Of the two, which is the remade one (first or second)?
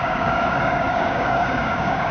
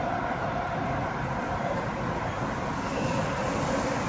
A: first